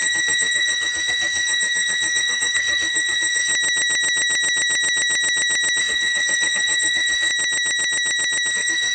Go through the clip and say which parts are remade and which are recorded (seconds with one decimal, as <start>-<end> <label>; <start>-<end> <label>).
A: 0.0-3.5 remade; 3.5-5.8 recorded; 5.8-7.3 remade; 7.3-8.5 recorded; 8.5-8.9 remade